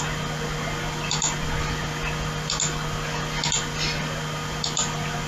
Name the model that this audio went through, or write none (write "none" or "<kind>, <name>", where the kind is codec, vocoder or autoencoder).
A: none